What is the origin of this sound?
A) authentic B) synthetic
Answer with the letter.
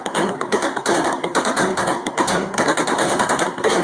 B